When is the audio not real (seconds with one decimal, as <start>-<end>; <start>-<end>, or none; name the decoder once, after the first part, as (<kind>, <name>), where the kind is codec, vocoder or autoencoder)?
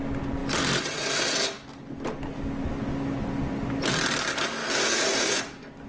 none